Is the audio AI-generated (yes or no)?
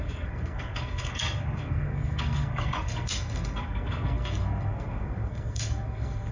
yes